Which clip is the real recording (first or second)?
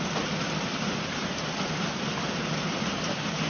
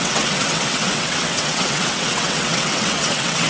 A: first